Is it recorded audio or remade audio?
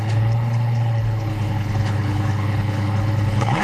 remade